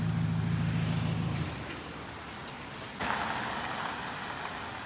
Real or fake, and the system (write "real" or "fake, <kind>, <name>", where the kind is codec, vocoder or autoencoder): real